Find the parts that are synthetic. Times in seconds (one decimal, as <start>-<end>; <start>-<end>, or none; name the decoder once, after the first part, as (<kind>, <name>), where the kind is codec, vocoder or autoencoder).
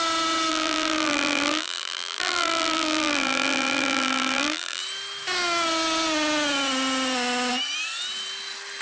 0.5-4.8 (vocoder, BigVGAN v2)